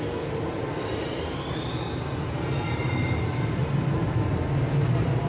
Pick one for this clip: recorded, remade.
recorded